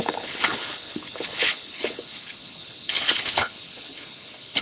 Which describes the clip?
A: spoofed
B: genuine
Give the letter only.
A